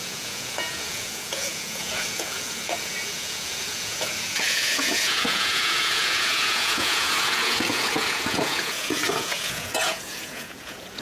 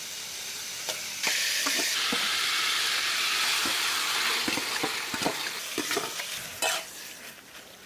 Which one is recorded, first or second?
second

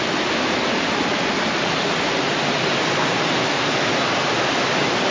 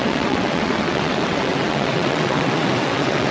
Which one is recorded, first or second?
first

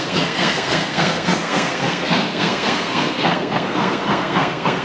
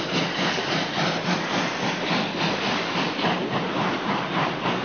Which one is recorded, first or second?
second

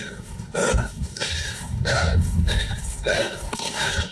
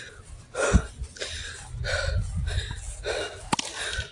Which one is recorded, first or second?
second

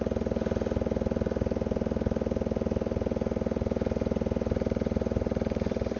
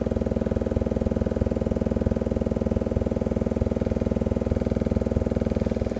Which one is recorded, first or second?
second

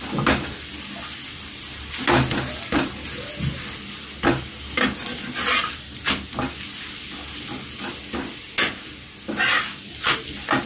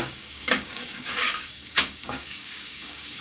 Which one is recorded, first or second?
first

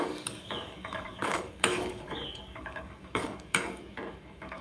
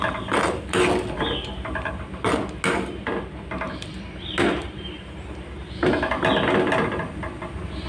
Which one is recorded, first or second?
second